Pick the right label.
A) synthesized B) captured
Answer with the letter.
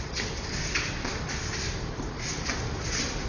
B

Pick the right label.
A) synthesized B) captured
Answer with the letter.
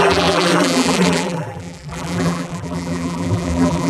A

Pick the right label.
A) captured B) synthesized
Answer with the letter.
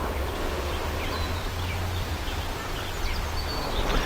B